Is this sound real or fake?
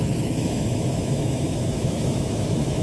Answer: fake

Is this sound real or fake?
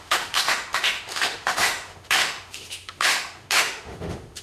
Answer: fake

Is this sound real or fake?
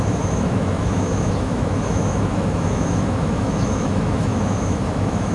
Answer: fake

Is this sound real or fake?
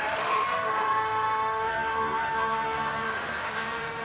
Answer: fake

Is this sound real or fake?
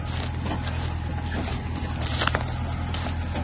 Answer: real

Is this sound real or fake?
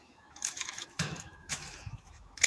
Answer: fake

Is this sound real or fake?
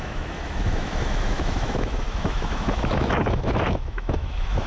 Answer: fake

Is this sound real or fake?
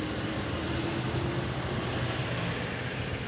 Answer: real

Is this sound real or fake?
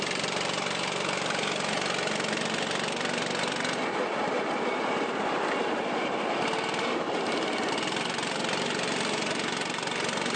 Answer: real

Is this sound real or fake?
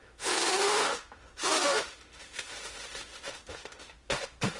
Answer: fake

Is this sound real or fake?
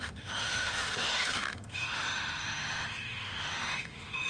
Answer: fake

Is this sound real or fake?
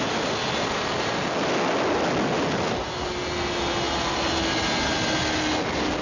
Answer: real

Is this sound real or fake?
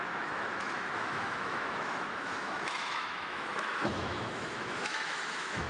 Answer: fake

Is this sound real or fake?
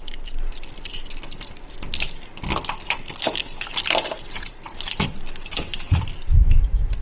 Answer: real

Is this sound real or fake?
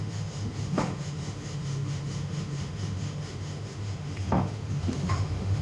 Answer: fake